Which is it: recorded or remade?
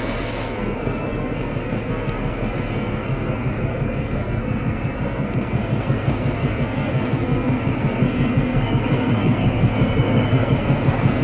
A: remade